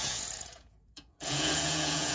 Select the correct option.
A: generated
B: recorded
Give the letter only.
A